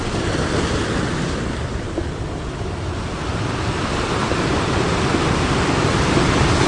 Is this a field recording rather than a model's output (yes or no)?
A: yes